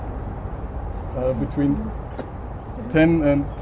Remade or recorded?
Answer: recorded